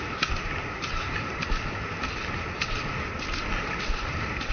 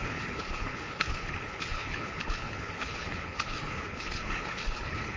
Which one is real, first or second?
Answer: first